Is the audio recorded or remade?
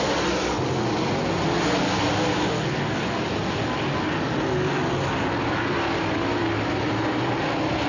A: recorded